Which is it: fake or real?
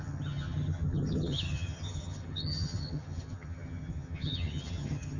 fake